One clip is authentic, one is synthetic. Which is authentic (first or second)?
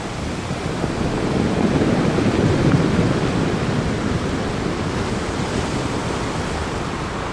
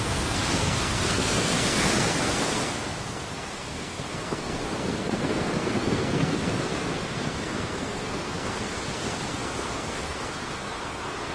first